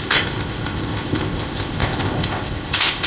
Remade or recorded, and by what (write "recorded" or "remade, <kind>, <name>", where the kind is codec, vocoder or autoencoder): remade, codec, ZipCodec